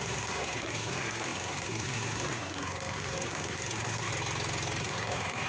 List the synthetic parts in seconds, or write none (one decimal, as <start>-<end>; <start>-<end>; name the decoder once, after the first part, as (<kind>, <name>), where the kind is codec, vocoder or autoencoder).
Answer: 0.0-4.1 (codec, SNAC); 4.8-5.5